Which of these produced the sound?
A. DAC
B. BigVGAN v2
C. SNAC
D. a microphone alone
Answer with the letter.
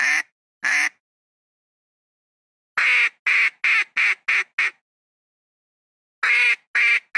D